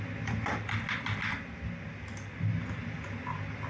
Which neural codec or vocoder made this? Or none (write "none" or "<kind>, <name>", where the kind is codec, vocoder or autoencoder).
none